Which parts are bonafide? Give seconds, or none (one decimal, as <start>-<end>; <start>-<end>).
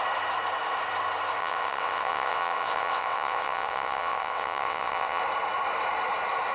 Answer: 0.0-1.4; 5.2-6.5